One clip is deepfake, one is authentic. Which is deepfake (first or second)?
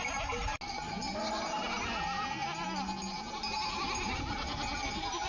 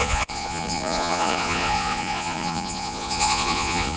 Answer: second